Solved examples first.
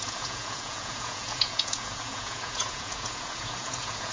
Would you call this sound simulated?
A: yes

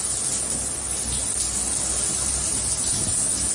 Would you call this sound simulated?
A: no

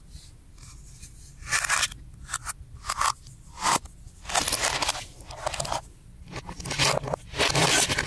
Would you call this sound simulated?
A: no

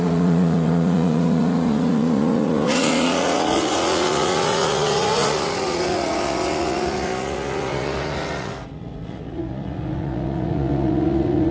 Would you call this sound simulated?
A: yes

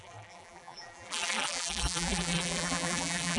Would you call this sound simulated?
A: yes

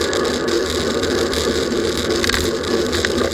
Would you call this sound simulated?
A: no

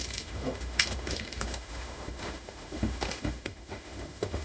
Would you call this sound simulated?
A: yes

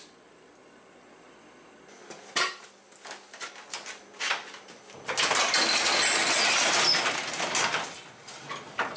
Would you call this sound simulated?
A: no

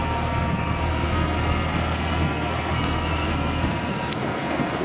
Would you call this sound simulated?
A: yes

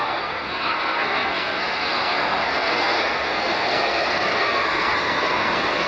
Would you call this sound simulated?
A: yes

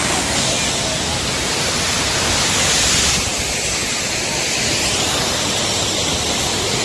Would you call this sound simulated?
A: no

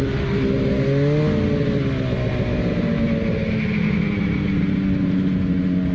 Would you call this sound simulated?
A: no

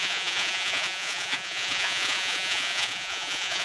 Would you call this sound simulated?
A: yes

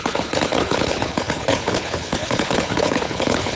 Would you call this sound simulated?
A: yes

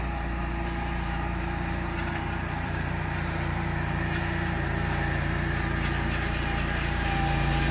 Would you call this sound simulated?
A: yes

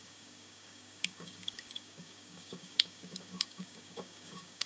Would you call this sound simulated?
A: yes